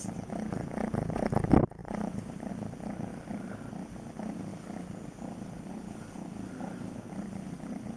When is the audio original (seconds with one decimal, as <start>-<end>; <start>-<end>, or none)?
0.0-1.8; 2.5-3.1; 3.7-8.0